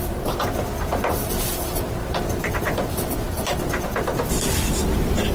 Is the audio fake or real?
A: real